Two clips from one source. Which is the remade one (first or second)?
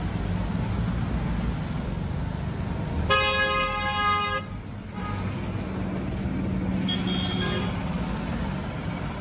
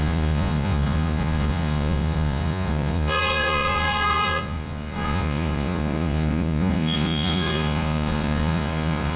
second